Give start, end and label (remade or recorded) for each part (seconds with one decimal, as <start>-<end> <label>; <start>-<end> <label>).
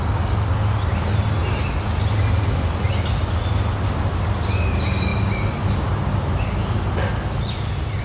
0.0-8.0 recorded